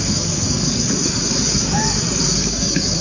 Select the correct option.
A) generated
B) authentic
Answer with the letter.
A